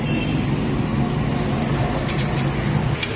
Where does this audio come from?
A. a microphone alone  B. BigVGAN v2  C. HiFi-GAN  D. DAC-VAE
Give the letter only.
A